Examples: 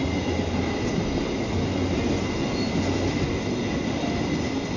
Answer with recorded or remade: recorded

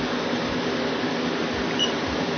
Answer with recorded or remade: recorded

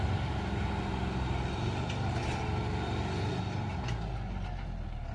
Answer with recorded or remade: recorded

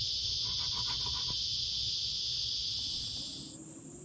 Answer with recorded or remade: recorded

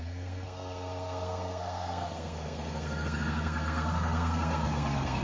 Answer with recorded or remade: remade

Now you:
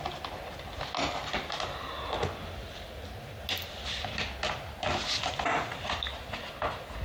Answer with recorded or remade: recorded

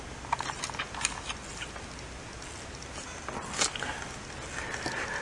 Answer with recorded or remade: recorded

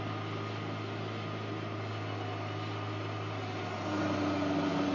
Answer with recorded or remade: recorded